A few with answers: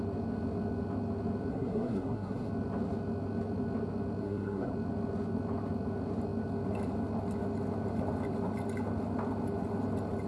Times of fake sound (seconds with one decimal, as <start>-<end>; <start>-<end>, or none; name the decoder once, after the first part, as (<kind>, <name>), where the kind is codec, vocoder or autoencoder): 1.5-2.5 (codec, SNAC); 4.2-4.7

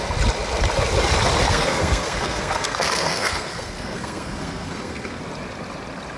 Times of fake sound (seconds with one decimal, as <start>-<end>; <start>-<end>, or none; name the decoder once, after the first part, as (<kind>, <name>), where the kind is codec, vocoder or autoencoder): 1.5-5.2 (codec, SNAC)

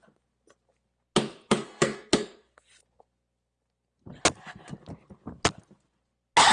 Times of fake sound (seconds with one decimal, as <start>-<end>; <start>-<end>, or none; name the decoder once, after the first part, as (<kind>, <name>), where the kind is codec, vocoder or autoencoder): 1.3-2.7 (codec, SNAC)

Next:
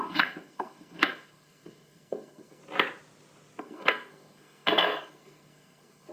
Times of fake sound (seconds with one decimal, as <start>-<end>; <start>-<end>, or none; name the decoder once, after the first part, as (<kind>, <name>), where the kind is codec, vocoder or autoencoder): 0.0-2.6 (codec, SNAC); 3.6-6.1

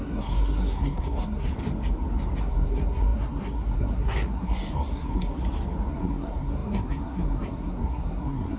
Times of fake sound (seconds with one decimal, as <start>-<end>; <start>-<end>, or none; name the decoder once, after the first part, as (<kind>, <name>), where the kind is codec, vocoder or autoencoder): 0.0-1.5 (codec, SNAC); 2.4-5.4; 5.9-8.6

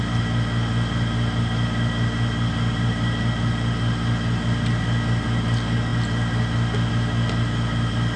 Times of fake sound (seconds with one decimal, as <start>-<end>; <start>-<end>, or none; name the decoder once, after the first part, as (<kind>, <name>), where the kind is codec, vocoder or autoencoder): none

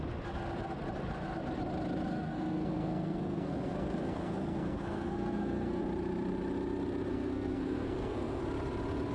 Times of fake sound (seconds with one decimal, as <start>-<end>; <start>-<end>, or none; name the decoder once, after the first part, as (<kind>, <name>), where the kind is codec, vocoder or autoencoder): 2.1-5.8 (codec, SNAC); 7.1-8.4